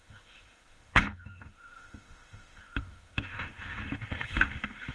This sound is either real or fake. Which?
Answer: fake